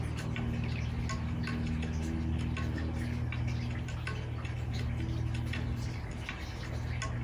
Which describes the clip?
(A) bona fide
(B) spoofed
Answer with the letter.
A